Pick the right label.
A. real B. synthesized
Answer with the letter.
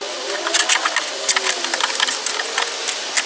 A